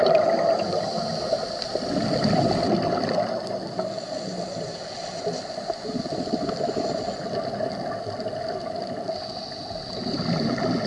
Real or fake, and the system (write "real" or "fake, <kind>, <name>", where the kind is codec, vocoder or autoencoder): real